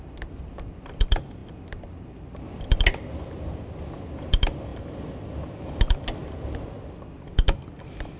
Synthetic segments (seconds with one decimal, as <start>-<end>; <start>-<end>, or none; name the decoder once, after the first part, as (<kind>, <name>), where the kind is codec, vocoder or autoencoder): none